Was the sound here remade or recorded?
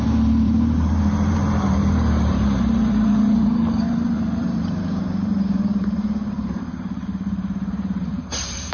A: remade